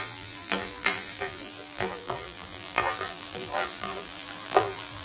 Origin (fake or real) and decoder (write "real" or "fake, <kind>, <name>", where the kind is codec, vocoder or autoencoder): fake, vocoder, BigVGAN v2